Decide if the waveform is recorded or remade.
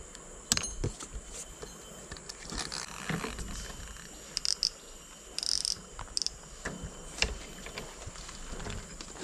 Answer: recorded